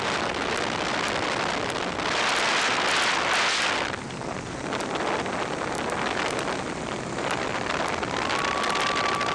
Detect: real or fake real